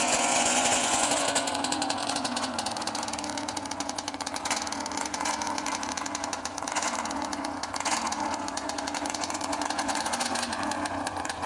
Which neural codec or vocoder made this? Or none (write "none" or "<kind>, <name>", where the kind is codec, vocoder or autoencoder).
vocoder, Vocos